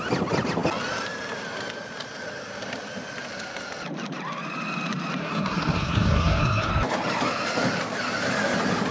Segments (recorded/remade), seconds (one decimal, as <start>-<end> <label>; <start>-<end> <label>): 0.0-5.2 recorded; 5.2-6.7 remade; 6.7-8.9 recorded

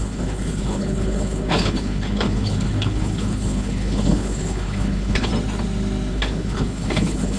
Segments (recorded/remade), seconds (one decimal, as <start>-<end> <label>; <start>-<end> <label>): 0.0-5.3 remade; 5.3-6.1 recorded; 6.1-7.4 remade

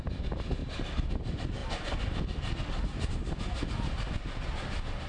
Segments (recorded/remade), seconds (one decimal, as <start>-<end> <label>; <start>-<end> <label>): 0.0-0.6 recorded; 0.6-1.1 remade; 1.1-5.1 recorded

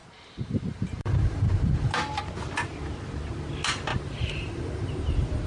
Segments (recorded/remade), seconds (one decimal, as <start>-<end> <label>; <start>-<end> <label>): 0.0-1.9 remade; 1.9-3.9 recorded; 3.9-4.9 remade; 4.9-5.5 recorded